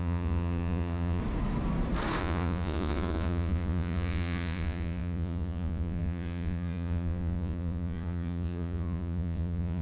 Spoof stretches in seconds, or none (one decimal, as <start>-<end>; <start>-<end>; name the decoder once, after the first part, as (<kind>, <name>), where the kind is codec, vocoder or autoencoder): 0.0-1.2 (vocoder, Vocos); 2.2-9.8